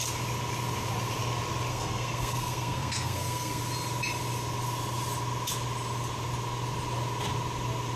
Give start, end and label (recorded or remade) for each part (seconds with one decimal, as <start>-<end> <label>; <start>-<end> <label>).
0.0-1.7 recorded; 1.7-3.6 remade; 3.6-8.0 recorded